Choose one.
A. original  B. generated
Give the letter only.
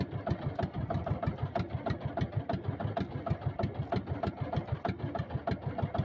A